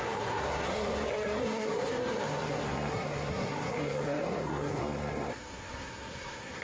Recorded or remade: remade